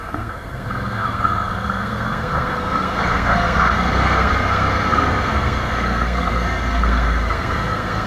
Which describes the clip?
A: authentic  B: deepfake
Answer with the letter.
B